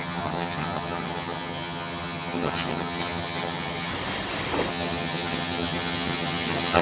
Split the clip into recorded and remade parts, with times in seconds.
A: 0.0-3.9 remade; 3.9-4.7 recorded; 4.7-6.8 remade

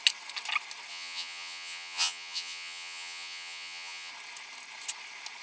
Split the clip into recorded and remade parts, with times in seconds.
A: 0.0-0.9 recorded; 0.9-4.1 remade; 4.1-5.4 recorded

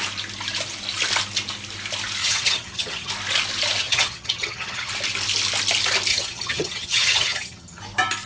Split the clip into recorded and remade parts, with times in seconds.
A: 0.0-2.2 recorded; 2.2-3.1 remade; 3.1-3.8 recorded; 3.8-4.9 remade; 4.9-6.1 recorded; 6.1-7.8 remade; 7.8-8.3 recorded

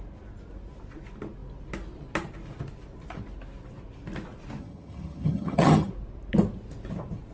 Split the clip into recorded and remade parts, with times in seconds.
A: 0.0-4.6 recorded; 4.6-5.9 remade; 5.9-7.3 recorded

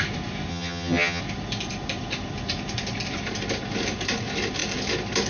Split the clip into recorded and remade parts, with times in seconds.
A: 0.0-0.5 recorded; 0.5-1.2 remade; 1.2-5.3 recorded

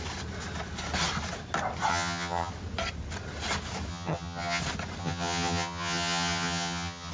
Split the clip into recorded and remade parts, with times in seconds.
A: 0.0-1.9 recorded; 1.9-2.5 remade; 2.5-3.9 recorded; 3.9-4.6 remade; 4.6-5.0 recorded; 5.0-7.1 remade

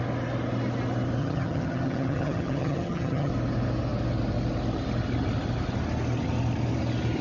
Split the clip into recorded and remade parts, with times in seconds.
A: 0.0-1.2 recorded; 1.2-3.3 remade; 3.3-7.2 recorded